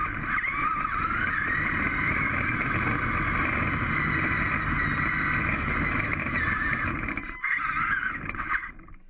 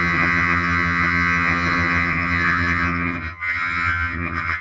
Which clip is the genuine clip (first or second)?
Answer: first